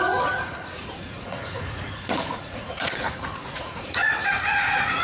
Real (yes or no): no